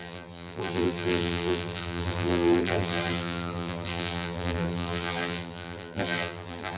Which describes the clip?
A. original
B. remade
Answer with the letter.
B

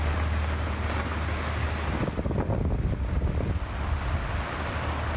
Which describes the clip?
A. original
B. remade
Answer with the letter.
A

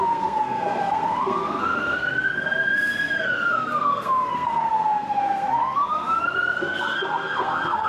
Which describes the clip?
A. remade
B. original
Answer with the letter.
A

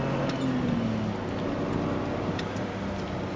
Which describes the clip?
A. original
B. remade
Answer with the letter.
A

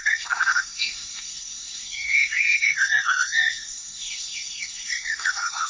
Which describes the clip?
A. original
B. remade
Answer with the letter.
B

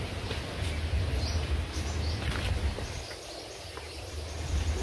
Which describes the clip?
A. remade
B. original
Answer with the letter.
B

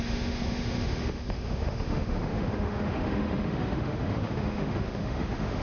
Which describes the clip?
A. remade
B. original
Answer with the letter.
A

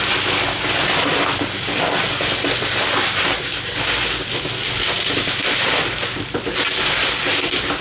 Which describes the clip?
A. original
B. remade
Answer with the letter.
A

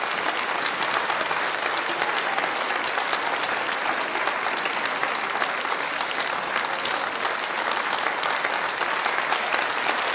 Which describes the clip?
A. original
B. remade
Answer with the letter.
A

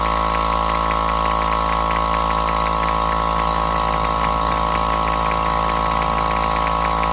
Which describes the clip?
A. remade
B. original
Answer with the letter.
B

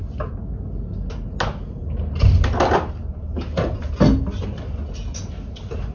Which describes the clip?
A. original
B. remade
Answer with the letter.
A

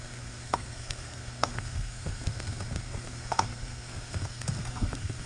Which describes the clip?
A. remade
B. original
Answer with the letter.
A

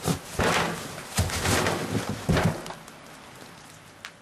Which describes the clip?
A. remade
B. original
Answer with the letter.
B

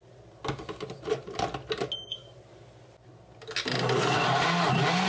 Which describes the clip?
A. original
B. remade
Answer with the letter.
A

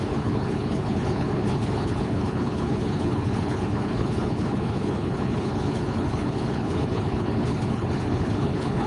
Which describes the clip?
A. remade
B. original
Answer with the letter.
A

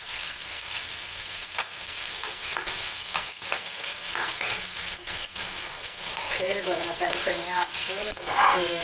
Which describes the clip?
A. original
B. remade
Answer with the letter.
B